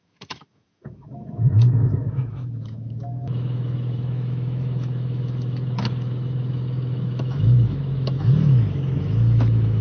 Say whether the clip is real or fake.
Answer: fake